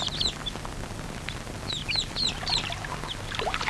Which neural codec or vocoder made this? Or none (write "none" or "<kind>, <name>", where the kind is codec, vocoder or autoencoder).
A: none